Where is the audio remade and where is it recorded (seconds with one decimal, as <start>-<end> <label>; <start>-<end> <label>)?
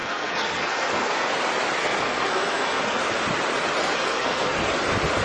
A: 0.0-1.3 remade; 1.3-1.8 recorded; 1.8-3.0 remade; 3.0-3.8 recorded; 3.8-4.7 remade; 4.7-5.2 recorded